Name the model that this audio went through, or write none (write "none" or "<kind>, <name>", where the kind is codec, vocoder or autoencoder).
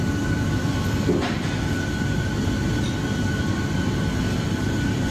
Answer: none